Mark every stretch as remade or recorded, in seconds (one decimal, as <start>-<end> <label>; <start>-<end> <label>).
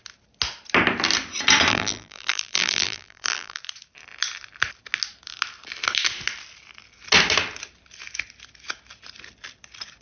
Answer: 0.0-1.7 recorded; 1.7-3.6 remade; 3.6-10.0 recorded